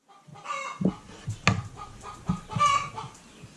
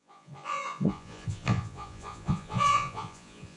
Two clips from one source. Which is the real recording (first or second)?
first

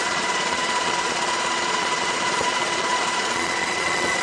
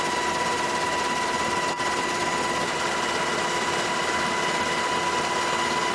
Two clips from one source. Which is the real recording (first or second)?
second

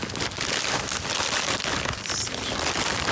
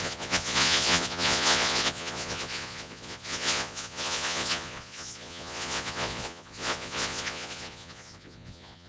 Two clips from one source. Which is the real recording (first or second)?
first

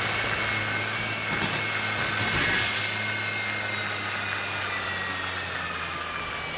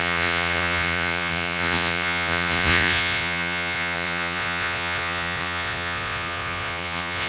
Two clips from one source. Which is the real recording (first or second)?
first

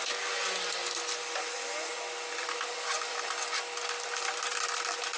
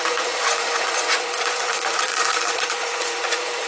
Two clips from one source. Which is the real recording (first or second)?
first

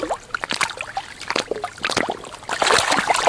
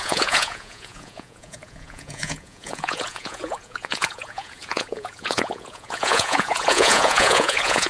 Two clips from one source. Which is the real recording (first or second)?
first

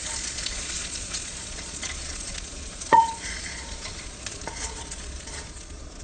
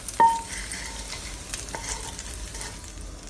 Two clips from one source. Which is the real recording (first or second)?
second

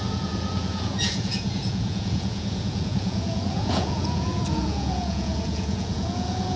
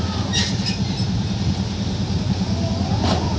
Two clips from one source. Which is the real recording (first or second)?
second